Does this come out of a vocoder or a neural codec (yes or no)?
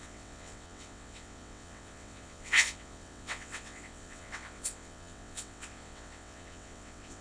yes